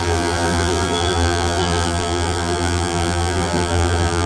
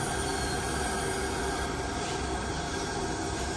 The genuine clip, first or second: second